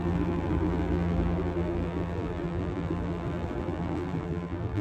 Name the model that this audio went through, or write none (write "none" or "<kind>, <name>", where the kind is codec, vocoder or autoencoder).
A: vocoder, BigVGAN v2